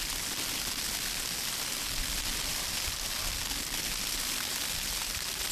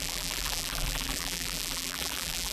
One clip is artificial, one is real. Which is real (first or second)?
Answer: first